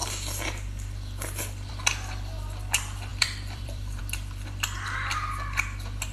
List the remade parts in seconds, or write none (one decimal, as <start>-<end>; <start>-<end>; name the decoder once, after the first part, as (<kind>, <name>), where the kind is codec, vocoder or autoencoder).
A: 3.1-4.0 (vocoder, BigVGAN v2)